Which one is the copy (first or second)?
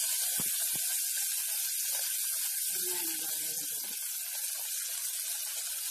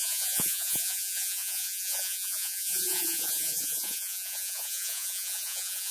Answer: second